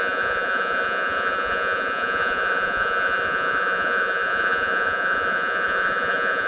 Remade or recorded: remade